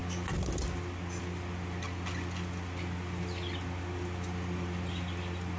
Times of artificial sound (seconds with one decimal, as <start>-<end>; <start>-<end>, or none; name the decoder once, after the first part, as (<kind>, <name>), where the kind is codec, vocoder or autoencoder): none